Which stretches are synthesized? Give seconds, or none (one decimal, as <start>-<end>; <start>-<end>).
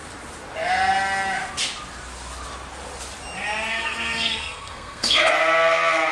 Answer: 3.7-5.3